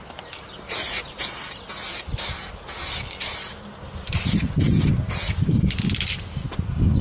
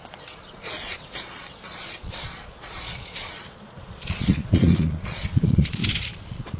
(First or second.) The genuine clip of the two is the first